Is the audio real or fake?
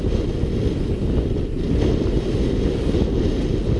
real